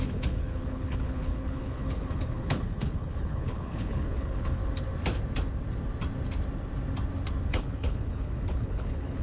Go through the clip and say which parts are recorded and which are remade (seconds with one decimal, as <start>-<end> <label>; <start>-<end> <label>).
0.0-4.6 remade; 4.6-7.5 recorded; 7.5-9.2 remade